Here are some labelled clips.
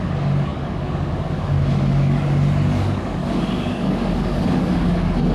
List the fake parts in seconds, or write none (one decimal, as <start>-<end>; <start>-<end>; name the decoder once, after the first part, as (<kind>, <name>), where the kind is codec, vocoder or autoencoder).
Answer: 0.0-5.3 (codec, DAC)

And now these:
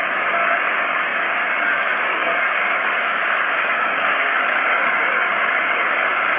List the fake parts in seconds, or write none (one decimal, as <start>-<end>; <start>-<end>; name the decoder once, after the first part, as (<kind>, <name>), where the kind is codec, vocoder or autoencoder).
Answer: 0.0-6.4 (codec, DAC)

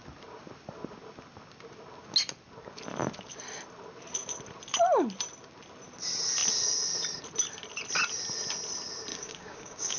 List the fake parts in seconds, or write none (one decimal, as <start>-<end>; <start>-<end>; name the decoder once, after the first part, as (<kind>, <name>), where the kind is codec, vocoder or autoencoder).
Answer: 9.1-10.0 (codec, DAC)

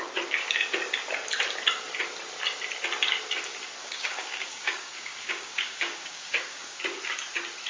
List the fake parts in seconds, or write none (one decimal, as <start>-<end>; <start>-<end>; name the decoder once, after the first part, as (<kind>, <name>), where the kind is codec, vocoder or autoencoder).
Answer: 3.8-6.8 (codec, DAC)

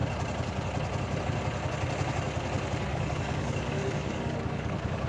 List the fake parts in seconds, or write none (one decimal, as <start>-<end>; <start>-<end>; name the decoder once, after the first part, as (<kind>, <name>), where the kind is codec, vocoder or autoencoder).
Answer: 2.9-5.1 (codec, DAC)

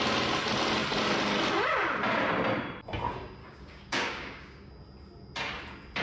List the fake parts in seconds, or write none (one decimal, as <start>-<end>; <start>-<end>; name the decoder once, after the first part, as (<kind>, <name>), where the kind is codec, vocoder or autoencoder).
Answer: 3.4-4.7 (codec, DAC)